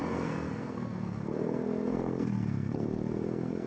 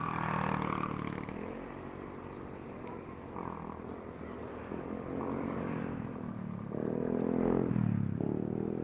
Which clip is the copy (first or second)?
first